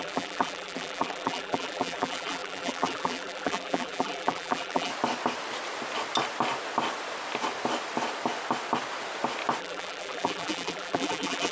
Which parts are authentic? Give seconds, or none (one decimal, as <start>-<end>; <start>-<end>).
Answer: 4.9-9.6